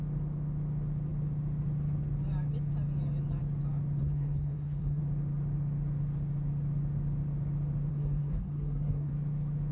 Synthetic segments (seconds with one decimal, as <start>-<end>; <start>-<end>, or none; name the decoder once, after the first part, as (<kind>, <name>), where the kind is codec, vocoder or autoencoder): 4.0-5.0 (codec, SNAC); 7.9-9.1